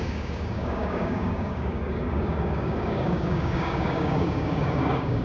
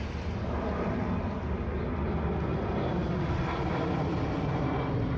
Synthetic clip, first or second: first